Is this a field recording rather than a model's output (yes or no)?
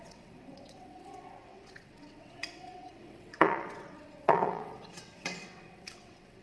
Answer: no